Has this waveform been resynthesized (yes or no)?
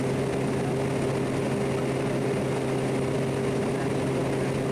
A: no